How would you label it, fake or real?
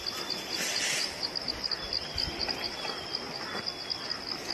real